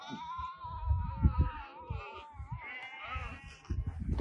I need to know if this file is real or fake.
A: real